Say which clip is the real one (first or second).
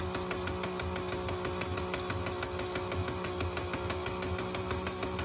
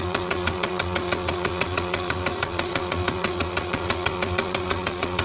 first